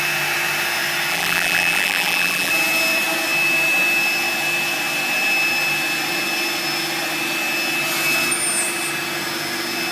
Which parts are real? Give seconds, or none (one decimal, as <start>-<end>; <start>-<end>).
0.0-1.1; 2.5-9.9